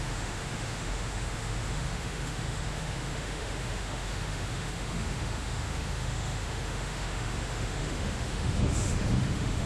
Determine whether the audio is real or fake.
fake